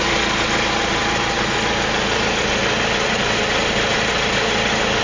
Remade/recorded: recorded